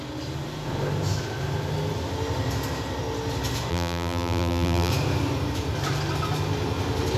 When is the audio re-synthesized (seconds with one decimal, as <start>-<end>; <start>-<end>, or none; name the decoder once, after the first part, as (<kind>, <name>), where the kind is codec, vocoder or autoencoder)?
3.7-4.9 (vocoder, BigVGAN v2)